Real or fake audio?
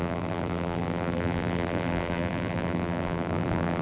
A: fake